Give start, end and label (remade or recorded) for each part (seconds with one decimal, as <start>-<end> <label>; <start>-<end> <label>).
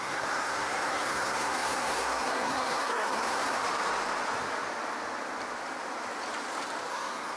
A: 0.0-3.6 remade; 3.6-6.9 recorded; 6.9-7.4 remade